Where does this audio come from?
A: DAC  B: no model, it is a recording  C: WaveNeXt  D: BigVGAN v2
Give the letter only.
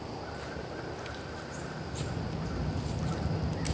B